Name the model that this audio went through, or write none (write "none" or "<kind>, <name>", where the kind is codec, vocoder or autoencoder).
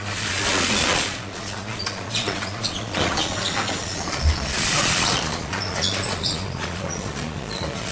vocoder, Vocos